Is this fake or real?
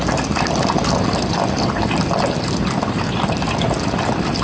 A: real